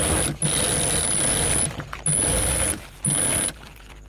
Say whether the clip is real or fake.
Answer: real